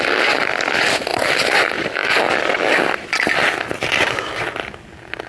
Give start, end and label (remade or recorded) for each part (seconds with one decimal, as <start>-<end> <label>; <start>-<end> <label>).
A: 0.0-1.1 recorded; 1.1-2.1 remade; 2.1-5.3 recorded

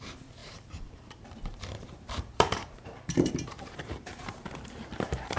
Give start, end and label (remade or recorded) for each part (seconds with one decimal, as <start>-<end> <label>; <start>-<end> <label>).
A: 0.0-5.4 remade

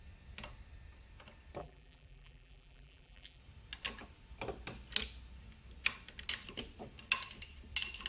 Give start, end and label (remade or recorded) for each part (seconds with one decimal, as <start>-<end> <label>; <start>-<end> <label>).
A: 0.0-1.6 recorded; 1.6-3.4 remade; 3.4-8.1 recorded

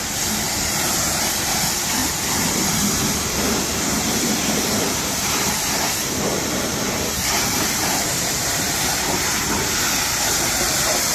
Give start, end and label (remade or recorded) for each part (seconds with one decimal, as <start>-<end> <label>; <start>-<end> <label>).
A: 0.0-11.1 remade

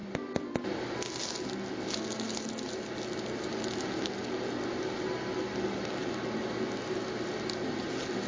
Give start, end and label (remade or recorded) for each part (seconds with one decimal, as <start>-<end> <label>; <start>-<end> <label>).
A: 0.0-4.2 recorded; 4.2-7.8 remade; 7.8-8.3 recorded

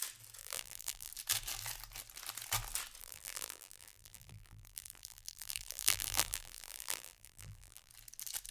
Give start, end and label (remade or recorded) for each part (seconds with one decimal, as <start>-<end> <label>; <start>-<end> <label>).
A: 0.0-0.4 recorded; 0.4-1.1 remade; 1.1-3.0 recorded; 3.0-7.9 remade; 7.9-8.5 recorded